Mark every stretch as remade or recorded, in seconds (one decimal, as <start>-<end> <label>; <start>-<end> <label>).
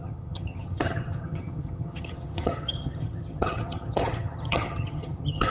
0.0-5.5 remade